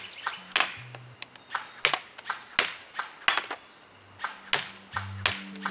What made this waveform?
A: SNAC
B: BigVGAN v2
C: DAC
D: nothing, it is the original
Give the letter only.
D